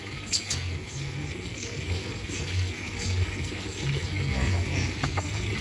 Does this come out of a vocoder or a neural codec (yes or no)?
yes